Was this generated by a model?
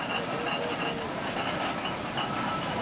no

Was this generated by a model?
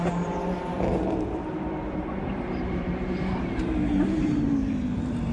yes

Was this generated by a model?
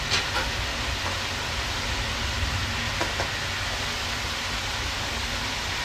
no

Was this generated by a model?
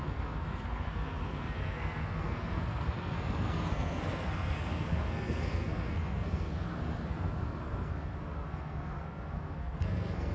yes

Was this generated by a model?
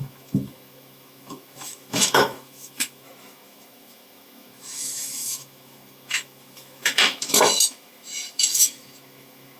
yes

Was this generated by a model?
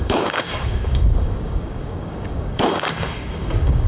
yes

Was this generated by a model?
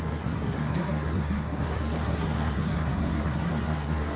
yes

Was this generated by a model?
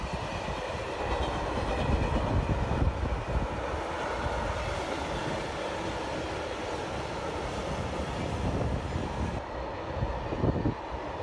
no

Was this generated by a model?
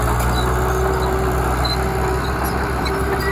no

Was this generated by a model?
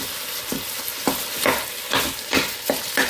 no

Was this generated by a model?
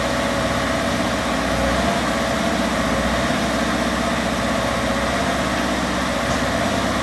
no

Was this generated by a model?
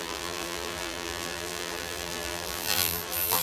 yes